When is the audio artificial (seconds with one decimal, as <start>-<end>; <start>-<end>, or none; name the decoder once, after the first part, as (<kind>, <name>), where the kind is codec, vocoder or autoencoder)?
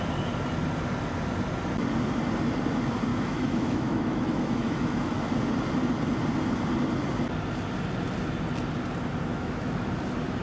3.1-5.3 (autoencoder, DAC-VAE); 9.3-9.9